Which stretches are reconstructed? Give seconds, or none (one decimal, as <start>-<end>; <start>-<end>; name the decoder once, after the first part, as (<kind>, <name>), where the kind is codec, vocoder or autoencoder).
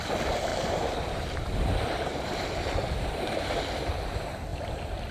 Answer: 0.5-3.6 (vocoder, BigVGAN v2)